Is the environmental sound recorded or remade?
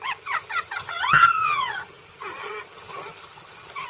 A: remade